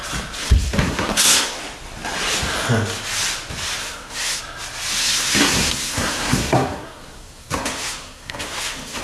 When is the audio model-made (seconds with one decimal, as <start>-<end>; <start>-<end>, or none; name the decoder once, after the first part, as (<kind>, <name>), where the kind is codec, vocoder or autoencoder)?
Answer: 0.4-1.6 (codec, SNAC); 3.8-4.4; 5.0-9.0